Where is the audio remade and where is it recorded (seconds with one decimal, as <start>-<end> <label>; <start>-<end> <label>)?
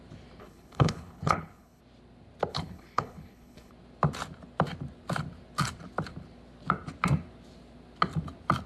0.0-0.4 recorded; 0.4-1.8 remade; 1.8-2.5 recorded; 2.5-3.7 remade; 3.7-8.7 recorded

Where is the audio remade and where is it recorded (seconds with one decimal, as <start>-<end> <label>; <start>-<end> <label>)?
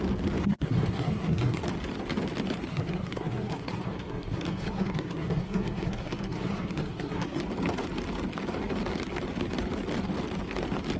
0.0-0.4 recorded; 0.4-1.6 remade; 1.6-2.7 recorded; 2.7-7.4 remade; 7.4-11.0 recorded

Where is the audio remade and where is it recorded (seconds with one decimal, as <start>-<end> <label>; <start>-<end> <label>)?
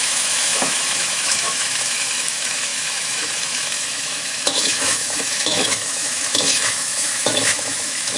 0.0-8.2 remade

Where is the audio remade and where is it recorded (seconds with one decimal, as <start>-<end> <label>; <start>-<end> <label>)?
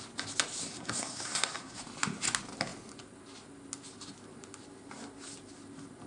0.0-0.7 recorded; 0.7-1.8 remade; 1.8-6.1 recorded